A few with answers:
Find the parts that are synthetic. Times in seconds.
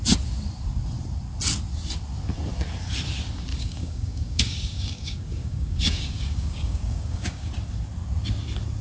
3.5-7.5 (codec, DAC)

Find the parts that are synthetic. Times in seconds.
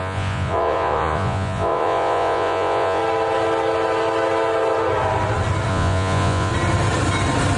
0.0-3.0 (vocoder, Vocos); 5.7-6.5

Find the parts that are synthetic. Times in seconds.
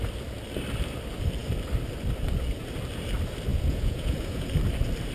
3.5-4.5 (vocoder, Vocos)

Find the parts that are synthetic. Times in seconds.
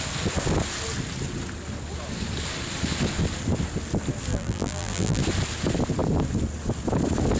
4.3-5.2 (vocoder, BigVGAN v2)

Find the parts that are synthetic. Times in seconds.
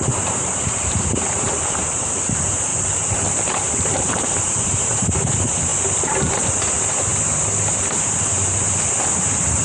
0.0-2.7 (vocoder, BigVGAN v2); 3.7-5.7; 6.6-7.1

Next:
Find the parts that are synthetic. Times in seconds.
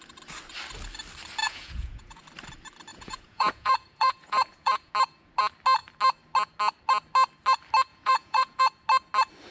1.4-2.2 (vocoder, Vocos); 2.9-4.9; 7.9-8.6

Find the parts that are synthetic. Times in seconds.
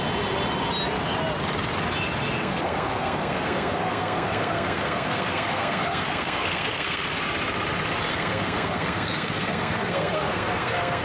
2.4-7.2 (codec, SNAC); 8.1-11.0